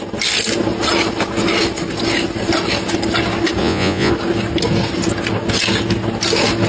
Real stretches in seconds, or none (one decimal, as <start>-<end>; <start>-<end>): 0.0-3.6; 4.1-6.7